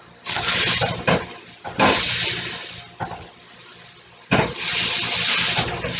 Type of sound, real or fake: real